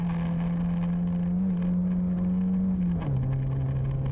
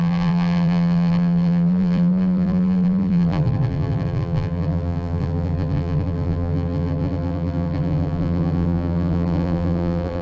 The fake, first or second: second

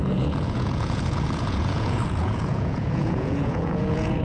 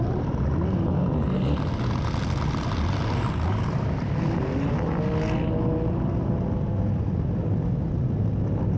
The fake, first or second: first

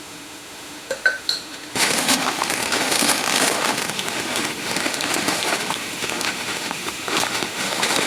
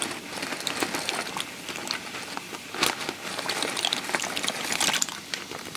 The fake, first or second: first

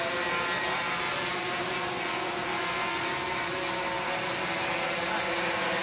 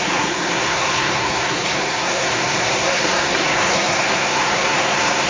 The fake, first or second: second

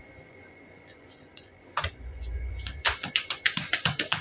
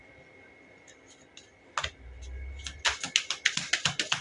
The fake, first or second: first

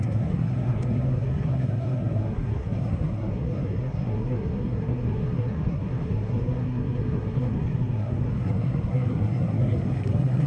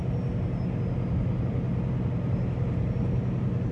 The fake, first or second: first